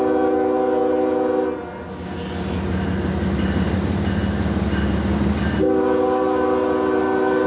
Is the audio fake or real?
real